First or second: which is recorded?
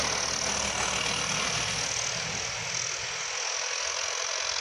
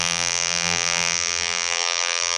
first